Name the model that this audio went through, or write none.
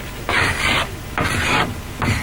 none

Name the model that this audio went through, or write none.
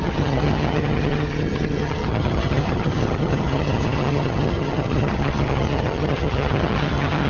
vocoder, HiFi-GAN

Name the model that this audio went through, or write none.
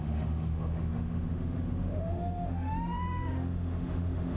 autoencoder, DAC-VAE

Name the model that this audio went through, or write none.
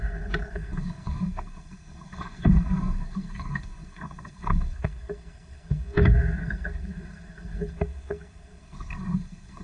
codec, SNAC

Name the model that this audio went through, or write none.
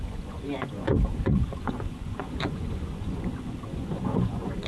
vocoder, Vocos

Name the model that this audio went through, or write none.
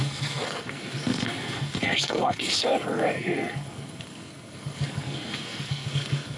codec, SNAC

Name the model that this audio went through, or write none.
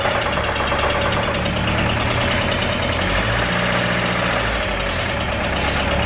none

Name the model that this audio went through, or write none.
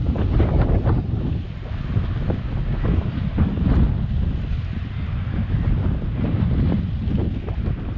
none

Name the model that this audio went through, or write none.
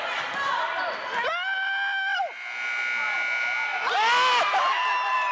none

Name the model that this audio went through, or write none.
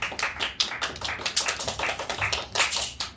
none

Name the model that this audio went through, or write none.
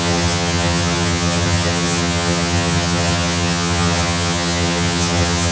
vocoder, HiFi-GAN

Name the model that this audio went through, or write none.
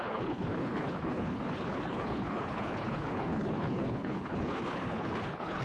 codec, HILCodec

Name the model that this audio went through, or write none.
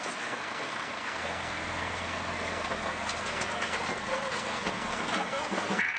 codec, SNAC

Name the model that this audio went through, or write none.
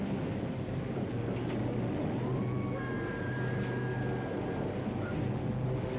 none